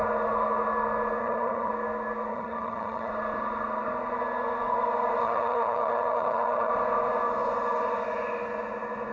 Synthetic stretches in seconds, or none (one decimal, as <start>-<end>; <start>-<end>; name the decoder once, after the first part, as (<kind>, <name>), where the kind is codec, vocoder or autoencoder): 1.2-1.7 (vocoder, HiFi-GAN); 2.3-3.1; 5.2-6.7